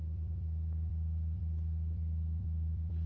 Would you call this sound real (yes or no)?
no